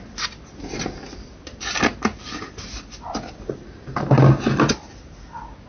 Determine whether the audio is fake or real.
real